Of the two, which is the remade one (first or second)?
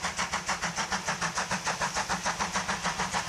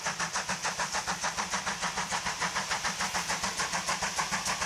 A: second